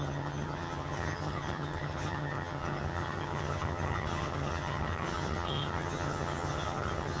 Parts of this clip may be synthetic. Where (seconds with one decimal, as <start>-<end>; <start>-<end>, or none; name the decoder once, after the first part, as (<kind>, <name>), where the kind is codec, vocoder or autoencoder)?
0.0-7.2 (vocoder, HiFi-GAN)